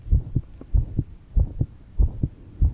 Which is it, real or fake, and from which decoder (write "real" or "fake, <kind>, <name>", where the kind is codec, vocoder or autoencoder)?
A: real